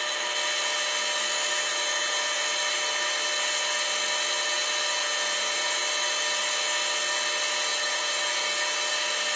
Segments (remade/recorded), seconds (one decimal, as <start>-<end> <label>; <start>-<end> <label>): 0.0-1.7 recorded; 1.7-2.4 remade; 2.4-5.0 recorded; 5.0-5.8 remade; 5.8-7.7 recorded; 7.7-8.6 remade; 8.6-9.4 recorded